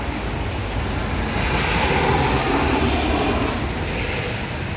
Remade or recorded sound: recorded